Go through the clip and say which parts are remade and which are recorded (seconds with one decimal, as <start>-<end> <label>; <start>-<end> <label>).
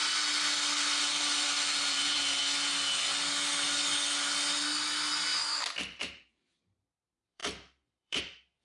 0.0-1.0 recorded; 1.0-2.4 remade; 2.4-6.0 recorded; 6.0-8.6 remade